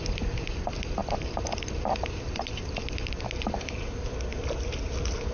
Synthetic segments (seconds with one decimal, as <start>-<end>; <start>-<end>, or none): none